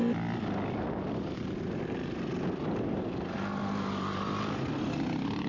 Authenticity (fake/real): real